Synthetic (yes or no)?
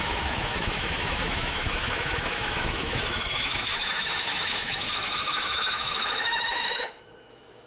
yes